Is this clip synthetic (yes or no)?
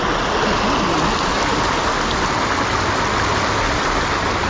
no